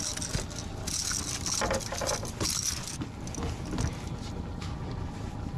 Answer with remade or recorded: recorded